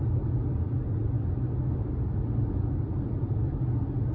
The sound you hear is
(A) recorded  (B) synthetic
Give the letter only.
A